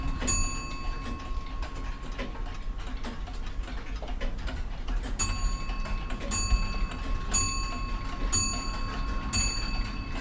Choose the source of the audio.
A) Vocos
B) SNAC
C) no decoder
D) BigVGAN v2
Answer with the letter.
C